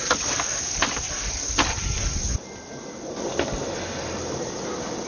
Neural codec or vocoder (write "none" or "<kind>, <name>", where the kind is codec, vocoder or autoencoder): none